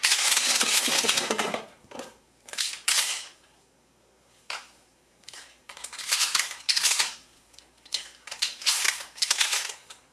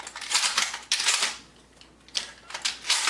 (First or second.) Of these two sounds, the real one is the second